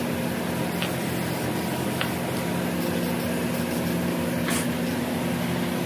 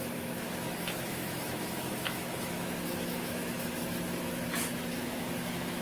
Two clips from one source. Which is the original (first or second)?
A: first